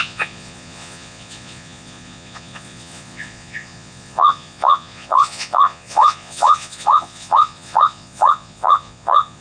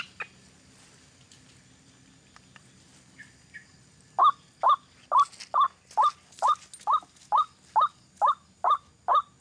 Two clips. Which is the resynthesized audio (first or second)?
first